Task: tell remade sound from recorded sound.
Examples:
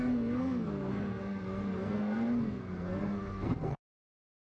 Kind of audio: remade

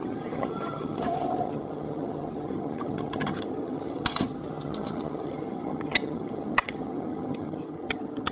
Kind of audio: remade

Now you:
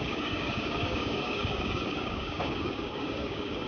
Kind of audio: remade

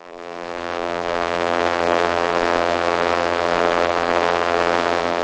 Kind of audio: remade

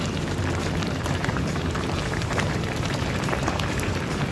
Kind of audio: remade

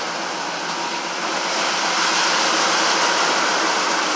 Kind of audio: recorded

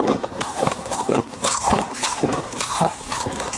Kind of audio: remade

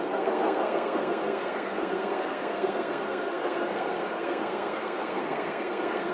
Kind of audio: remade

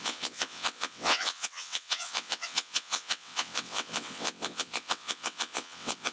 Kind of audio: remade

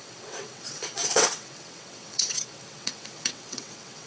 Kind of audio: remade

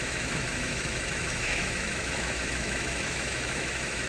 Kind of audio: remade